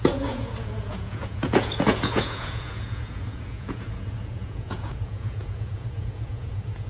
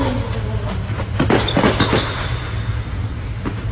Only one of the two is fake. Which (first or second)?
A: first